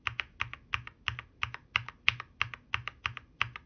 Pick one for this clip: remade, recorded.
recorded